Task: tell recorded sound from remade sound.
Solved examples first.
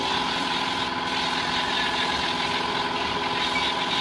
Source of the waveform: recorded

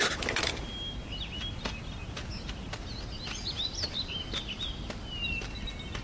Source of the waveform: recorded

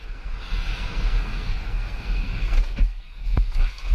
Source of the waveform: remade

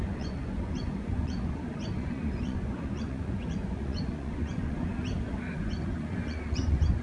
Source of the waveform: remade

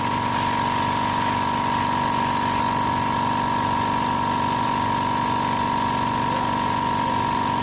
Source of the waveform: recorded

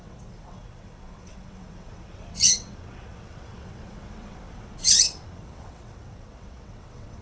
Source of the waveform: remade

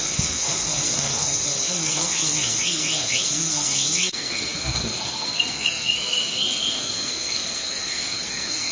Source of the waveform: remade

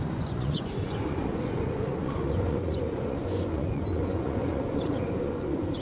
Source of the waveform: remade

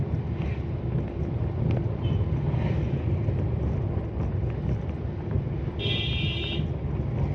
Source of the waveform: recorded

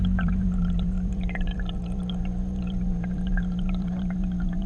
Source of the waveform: remade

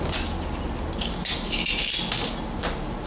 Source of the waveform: recorded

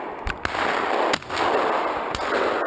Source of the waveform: recorded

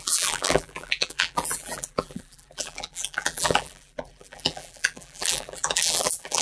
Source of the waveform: remade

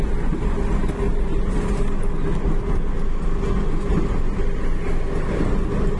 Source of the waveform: recorded